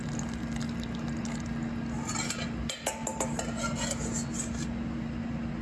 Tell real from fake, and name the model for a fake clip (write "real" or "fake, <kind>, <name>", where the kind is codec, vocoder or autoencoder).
real